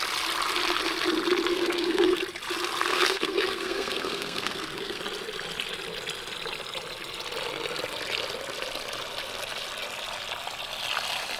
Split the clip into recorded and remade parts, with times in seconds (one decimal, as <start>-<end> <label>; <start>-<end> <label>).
0.0-1.5 recorded; 1.5-2.2 remade; 2.2-2.9 recorded; 2.9-5.0 remade; 5.0-11.4 recorded